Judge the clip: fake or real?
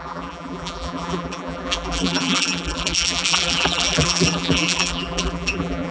fake